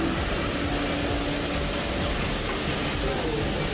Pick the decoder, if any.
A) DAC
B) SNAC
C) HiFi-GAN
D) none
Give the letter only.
D